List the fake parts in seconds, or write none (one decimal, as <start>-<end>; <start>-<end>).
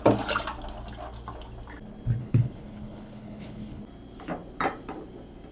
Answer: 2.2-3.8